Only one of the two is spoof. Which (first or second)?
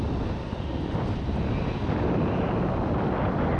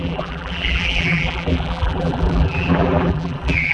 second